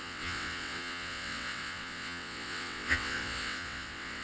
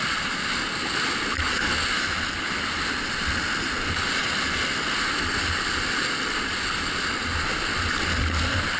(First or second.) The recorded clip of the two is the second